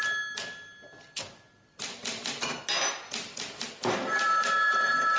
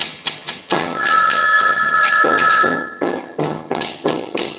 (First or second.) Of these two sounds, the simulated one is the second